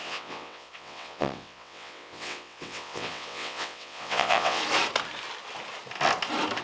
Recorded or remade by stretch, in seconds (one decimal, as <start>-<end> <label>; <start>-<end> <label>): 0.0-4.6 remade; 4.6-6.6 recorded